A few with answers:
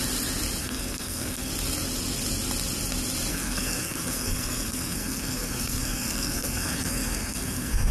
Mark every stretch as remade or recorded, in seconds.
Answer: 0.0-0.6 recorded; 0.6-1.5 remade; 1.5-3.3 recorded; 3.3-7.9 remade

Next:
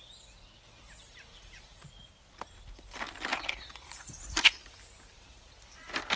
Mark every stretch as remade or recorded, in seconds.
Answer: 0.0-1.3 recorded; 1.3-2.1 remade; 2.1-3.3 recorded; 3.3-4.1 remade; 4.1-6.2 recorded

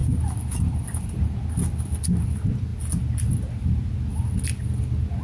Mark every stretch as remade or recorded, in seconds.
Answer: 0.0-5.2 recorded

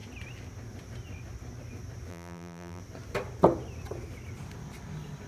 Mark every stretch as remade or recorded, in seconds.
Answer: 0.0-2.1 recorded; 2.1-2.8 remade; 2.8-5.3 recorded

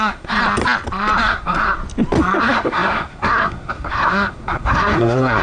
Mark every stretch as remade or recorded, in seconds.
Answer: 0.0-0.4 remade; 0.4-1.2 recorded; 1.2-1.8 remade; 1.8-2.4 recorded; 2.4-5.4 remade